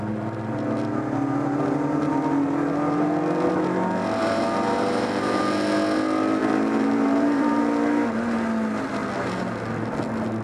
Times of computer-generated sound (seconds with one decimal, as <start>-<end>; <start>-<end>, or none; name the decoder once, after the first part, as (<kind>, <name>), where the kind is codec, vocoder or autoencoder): 4.2-5.4 (vocoder, BigVGAN v2); 6.4-7.6